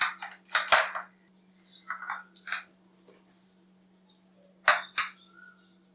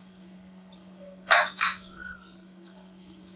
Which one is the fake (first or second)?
second